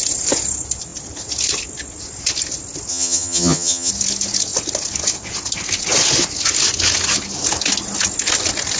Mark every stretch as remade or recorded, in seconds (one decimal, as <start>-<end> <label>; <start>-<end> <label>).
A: 0.0-2.9 recorded; 2.9-3.9 remade; 3.9-8.8 recorded